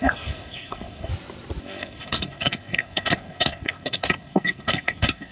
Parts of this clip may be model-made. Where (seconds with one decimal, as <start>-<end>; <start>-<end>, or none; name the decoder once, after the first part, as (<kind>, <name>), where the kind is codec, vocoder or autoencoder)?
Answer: 0.0-1.1 (codec, SNAC); 1.6-5.3